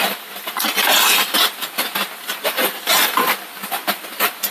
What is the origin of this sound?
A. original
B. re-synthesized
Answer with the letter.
A